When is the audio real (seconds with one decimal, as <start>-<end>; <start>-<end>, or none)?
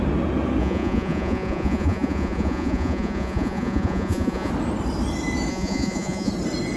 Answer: 0.0-0.6; 4.5-5.5; 6.3-6.8